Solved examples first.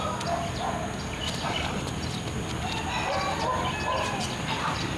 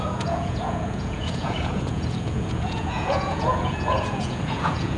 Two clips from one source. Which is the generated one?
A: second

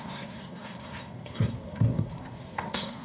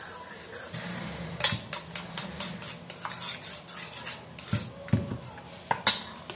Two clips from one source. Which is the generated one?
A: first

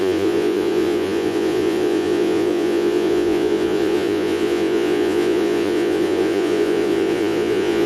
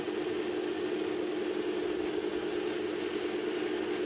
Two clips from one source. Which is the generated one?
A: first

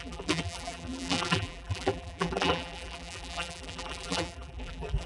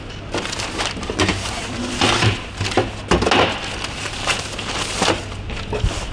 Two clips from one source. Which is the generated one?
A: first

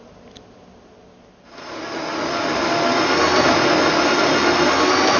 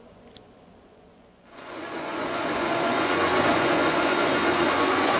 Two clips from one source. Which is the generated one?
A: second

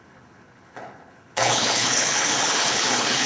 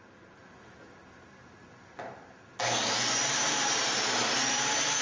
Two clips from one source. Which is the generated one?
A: first